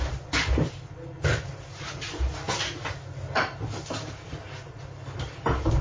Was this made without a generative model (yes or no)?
yes